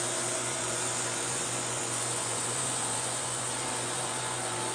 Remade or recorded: remade